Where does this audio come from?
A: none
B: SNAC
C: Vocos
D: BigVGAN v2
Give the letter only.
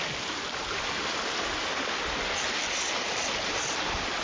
A